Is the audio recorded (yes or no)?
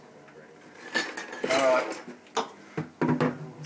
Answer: yes